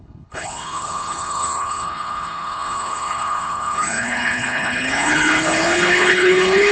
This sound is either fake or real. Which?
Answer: fake